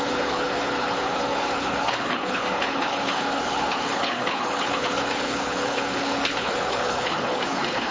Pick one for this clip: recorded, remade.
remade